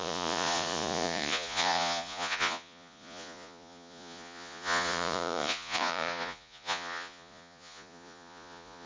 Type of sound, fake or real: fake